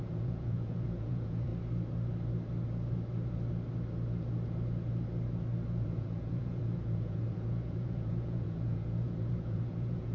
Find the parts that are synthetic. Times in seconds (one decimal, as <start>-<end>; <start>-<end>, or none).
0.0-1.5; 5.7-10.1